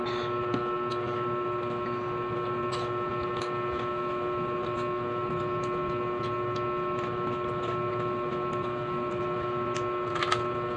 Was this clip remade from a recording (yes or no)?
no